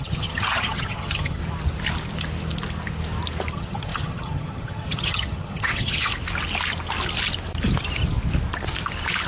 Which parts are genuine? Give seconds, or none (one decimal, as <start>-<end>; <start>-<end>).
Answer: 1.4-3.5; 6.1-9.3